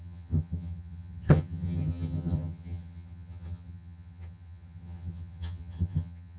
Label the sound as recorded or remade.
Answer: remade